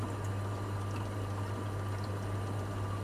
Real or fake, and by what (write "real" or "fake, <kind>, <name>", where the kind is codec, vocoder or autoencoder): real